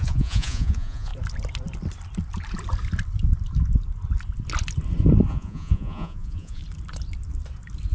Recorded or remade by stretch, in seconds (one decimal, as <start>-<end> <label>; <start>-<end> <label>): 0.0-1.1 remade; 1.1-5.3 recorded; 5.3-6.6 remade; 6.6-7.9 recorded